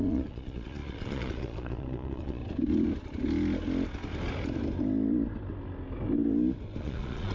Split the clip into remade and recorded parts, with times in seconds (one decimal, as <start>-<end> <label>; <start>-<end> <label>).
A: 0.0-2.4 remade; 2.4-6.8 recorded; 6.8-7.3 remade